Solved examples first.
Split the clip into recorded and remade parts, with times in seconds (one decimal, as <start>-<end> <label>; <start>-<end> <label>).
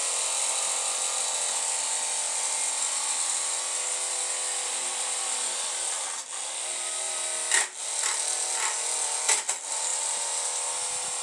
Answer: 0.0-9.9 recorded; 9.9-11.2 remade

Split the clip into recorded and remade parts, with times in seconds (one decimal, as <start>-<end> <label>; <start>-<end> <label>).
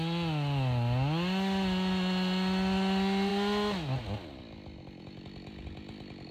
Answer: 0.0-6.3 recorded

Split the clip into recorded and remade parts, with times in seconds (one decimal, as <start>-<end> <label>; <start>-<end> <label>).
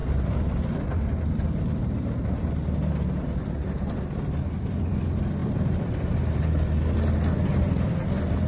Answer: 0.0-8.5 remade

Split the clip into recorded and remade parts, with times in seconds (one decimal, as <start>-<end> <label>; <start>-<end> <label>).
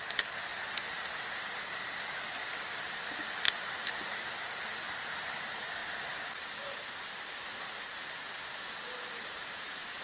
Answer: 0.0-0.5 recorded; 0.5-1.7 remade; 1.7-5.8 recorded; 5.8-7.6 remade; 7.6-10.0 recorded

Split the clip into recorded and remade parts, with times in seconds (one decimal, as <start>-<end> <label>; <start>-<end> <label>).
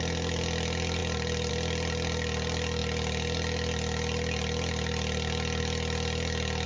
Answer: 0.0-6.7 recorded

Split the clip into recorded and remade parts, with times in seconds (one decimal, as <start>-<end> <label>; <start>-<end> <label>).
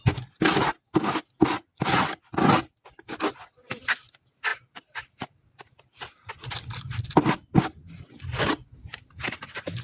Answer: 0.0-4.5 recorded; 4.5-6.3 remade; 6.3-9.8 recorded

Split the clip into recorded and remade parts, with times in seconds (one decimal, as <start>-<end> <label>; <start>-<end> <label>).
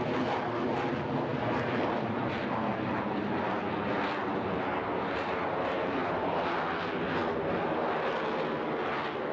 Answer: 0.0-1.3 recorded; 1.3-2.3 remade; 2.3-4.9 recorded; 4.9-6.4 remade; 6.4-9.3 recorded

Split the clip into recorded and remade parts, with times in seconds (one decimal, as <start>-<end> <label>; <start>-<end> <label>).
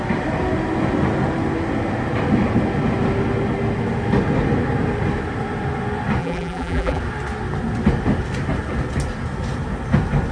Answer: 0.0-6.2 recorded; 6.2-7.0 remade; 7.0-10.3 recorded